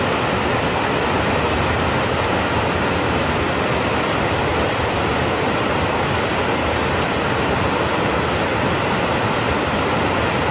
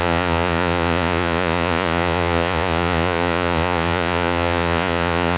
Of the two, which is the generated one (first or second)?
second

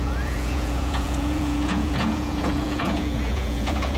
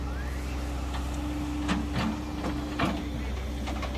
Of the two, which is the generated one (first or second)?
first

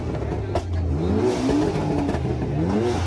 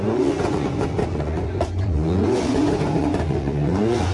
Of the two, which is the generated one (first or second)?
second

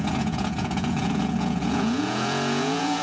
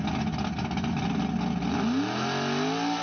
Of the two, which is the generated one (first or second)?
first